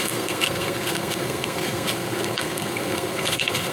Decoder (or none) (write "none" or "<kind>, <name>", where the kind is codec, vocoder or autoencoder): codec, SNAC